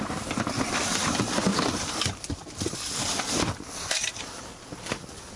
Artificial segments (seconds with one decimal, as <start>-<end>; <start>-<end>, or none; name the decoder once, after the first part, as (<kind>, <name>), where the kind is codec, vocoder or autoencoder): 1.5-4.2 (vocoder, BigVGAN v2)